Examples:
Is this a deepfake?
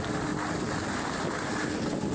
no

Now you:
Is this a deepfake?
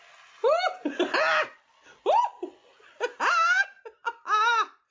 no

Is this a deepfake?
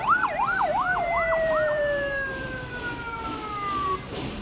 yes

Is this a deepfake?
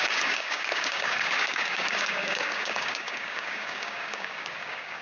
yes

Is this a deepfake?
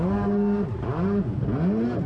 no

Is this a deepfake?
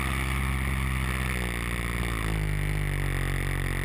no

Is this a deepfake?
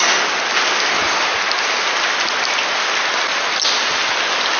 no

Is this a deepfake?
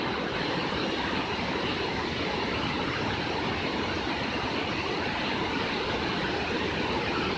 no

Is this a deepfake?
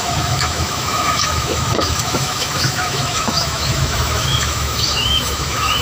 yes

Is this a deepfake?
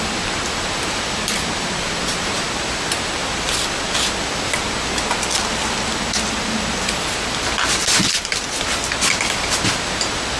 no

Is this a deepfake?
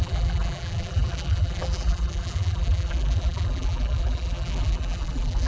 yes